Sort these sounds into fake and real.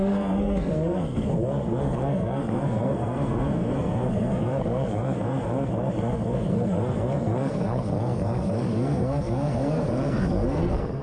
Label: fake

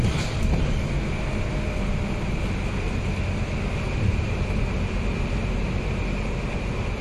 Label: real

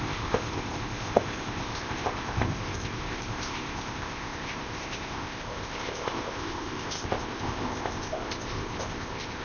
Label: fake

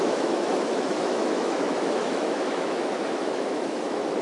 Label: fake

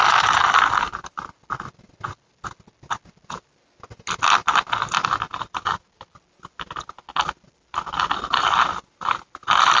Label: real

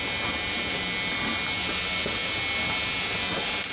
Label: real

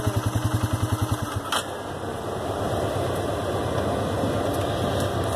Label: real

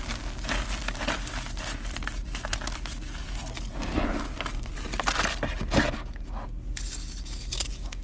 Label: real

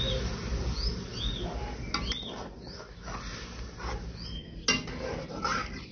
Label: real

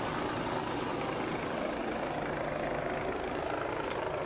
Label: real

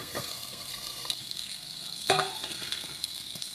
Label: fake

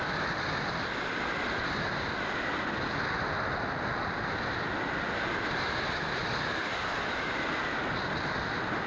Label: real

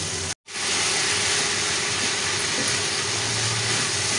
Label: real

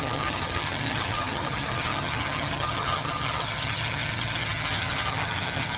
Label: fake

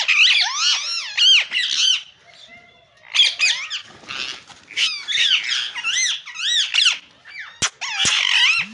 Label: real